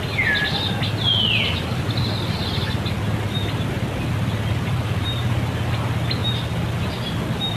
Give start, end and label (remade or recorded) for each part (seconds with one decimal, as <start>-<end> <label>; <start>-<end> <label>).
0.0-7.6 recorded